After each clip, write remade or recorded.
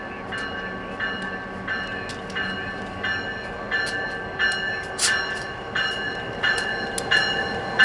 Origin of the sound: recorded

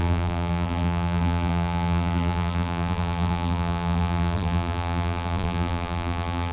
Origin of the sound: remade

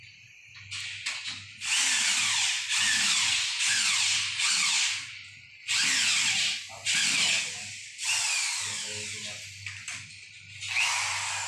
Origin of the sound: recorded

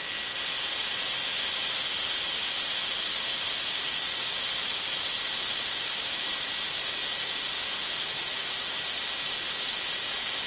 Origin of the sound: recorded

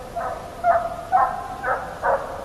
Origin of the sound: recorded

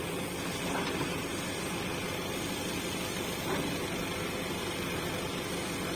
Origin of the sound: recorded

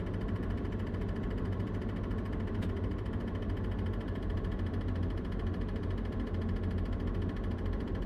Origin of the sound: recorded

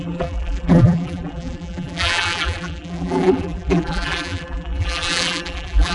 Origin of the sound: remade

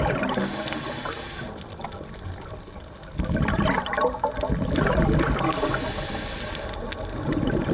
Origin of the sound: recorded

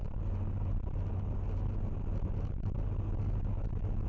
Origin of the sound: recorded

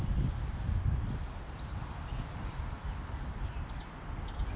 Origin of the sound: recorded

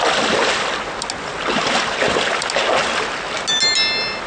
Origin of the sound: recorded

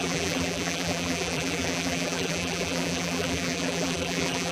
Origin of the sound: remade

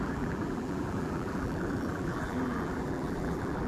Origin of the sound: remade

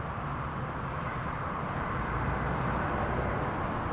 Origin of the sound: recorded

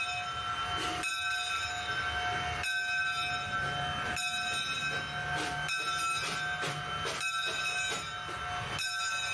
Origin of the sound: recorded